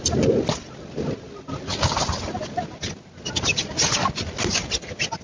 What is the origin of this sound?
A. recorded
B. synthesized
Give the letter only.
A